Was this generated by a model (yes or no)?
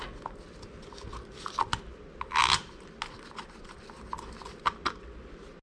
no